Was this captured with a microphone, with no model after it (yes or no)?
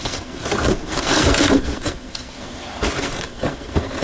no